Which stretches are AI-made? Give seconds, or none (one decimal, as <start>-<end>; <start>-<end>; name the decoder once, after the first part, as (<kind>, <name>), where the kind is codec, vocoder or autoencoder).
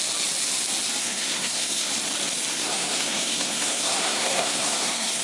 1.0-1.9 (codec, SNAC); 2.5-5.2